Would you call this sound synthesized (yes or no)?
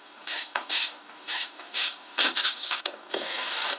yes